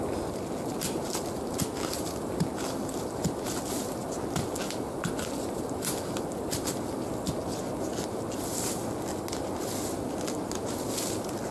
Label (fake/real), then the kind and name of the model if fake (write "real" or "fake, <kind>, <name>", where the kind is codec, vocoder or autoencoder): real